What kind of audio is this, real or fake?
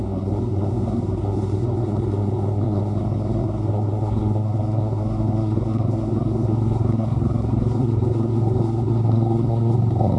fake